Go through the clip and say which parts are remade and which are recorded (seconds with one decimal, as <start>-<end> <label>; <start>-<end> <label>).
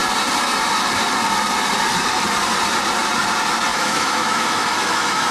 0.0-3.7 recorded; 3.7-5.3 remade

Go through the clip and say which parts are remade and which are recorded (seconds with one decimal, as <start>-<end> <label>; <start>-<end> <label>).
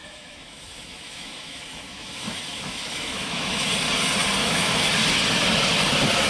0.0-3.7 remade; 3.7-4.4 recorded; 4.4-4.9 remade; 4.9-6.3 recorded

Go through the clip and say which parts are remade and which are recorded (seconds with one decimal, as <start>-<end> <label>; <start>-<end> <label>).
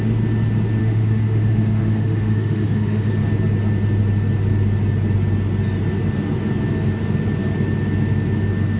0.0-0.8 recorded; 0.8-3.1 remade; 3.1-8.8 recorded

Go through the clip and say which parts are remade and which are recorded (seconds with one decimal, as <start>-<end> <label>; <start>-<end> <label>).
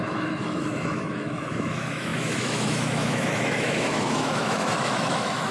0.0-5.5 remade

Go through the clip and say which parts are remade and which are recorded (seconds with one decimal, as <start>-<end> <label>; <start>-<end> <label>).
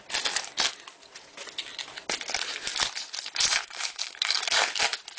0.0-3.6 recorded; 3.6-4.4 remade; 4.4-5.2 recorded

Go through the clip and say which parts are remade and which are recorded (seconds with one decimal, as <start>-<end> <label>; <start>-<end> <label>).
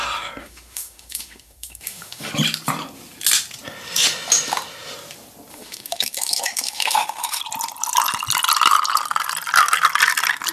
0.0-0.4 recorded; 0.4-2.3 remade; 2.3-5.5 recorded; 5.5-7.4 remade; 7.4-10.5 recorded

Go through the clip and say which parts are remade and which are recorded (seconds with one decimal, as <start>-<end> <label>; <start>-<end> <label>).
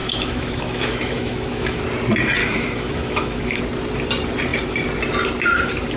0.0-1.8 remade; 1.8-2.4 recorded; 2.4-3.6 remade; 3.6-6.0 recorded